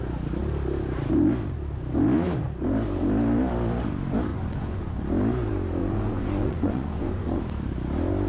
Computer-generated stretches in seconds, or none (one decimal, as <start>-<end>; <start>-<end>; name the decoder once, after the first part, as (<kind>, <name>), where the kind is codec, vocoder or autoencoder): 4.3-5.1 (vocoder, Vocos); 5.8-7.4